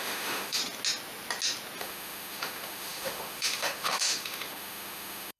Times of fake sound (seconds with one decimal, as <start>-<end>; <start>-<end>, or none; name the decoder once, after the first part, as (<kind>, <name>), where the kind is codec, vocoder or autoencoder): 0.0-0.6 (autoencoder, DAC-VAE); 1.8-5.4